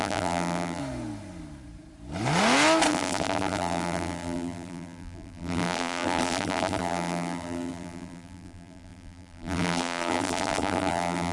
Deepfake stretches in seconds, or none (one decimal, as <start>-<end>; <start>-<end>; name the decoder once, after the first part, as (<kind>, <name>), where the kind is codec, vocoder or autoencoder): 0.0-0.8 (vocoder, BigVGAN v2); 2.9-11.3